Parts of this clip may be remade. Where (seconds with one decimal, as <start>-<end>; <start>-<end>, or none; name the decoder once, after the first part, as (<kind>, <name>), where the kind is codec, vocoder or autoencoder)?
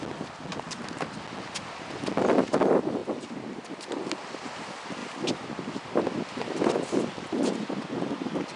none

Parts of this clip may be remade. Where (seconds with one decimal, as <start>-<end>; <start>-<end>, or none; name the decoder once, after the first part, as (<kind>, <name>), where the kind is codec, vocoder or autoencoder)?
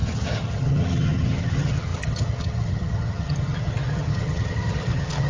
0.0-5.3 (vocoder, HiFi-GAN)